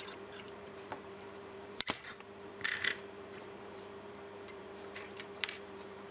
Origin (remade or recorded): remade